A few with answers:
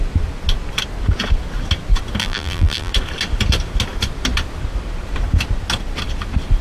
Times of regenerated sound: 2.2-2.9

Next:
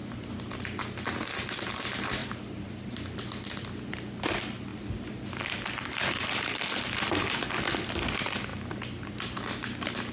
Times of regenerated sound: 2.2-3.2; 4.7-6.7

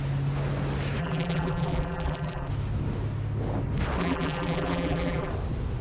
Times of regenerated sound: 1.0-2.5; 4.0-5.3

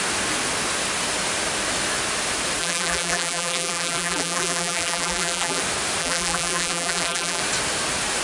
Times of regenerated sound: 2.6-5.6; 6.0-7.4